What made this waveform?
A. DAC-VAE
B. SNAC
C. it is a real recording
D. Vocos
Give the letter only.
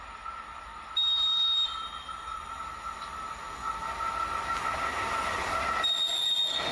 C